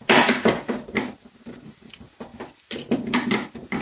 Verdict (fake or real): real